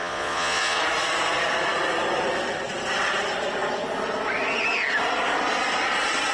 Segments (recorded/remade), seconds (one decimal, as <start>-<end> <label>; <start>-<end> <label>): 0.0-0.8 remade; 0.8-6.3 recorded